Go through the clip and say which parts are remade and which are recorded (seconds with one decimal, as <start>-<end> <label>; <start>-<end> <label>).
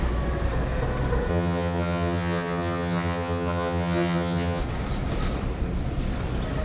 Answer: 0.0-1.3 recorded; 1.3-4.6 remade; 4.6-6.6 recorded